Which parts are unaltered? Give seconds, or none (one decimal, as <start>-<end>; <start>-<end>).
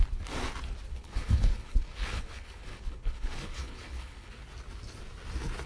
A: 0.0-0.9; 4.3-5.7